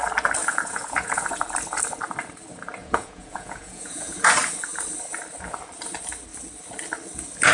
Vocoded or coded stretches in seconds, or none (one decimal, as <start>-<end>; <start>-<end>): 0.4-1.3; 2.8-4.3